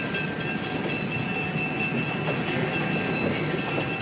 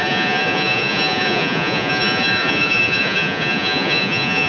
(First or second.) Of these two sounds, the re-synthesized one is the second